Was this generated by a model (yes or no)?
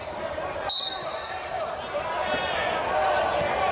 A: no